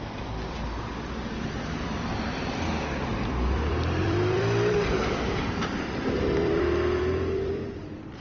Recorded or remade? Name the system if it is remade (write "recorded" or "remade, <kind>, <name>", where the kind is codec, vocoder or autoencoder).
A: remade, vocoder, BigVGAN v2